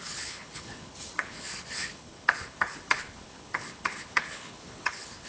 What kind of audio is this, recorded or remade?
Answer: remade